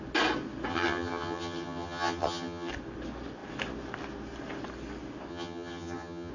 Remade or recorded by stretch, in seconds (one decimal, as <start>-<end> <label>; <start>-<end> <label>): 0.0-0.7 recorded; 0.7-2.7 remade; 2.7-5.3 recorded; 5.3-6.3 remade